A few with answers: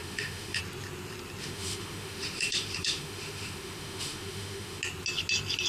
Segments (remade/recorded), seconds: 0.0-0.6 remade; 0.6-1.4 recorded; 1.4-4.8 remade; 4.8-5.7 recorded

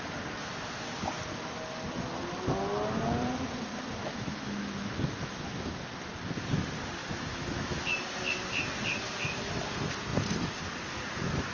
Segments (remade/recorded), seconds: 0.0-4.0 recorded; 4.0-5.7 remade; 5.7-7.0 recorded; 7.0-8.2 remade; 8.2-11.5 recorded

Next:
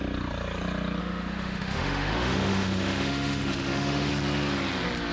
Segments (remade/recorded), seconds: 0.0-1.0 recorded; 1.0-4.1 remade; 4.1-5.1 recorded

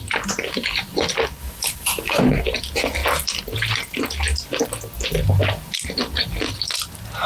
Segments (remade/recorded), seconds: 0.0-1.4 recorded; 1.4-2.2 remade; 2.2-7.3 recorded